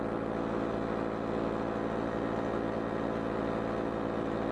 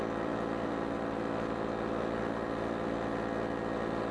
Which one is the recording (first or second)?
first